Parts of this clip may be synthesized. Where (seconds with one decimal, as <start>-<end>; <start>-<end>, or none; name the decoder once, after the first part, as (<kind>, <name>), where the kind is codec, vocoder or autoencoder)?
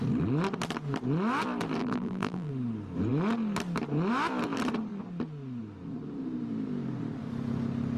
1.8-2.5 (vocoder, BigVGAN v2)